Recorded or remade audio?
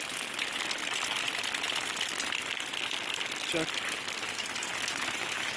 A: recorded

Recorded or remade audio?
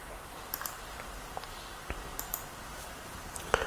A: remade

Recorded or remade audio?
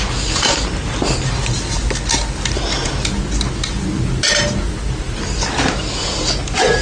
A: recorded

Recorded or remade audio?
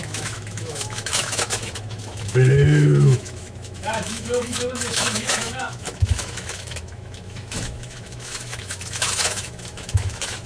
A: remade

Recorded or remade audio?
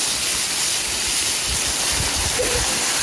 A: recorded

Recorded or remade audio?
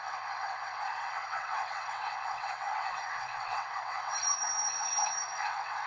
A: remade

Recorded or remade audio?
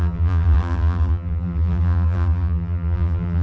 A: remade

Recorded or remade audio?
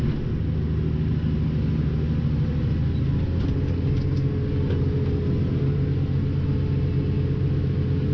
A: recorded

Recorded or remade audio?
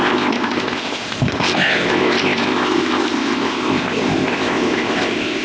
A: remade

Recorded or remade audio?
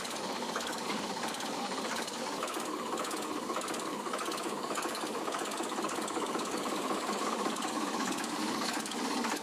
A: remade